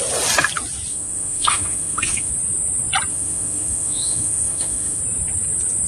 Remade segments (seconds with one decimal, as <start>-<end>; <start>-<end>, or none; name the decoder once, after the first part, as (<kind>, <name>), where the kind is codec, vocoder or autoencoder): 0.9-2.3 (autoencoder, DAC-VAE); 3.1-5.0